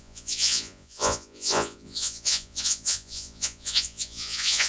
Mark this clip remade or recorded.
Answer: remade